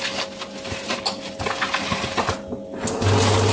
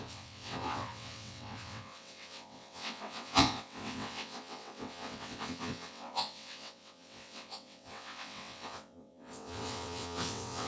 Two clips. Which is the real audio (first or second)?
first